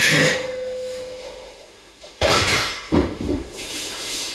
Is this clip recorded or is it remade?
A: remade